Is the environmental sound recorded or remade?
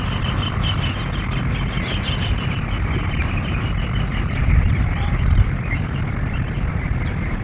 recorded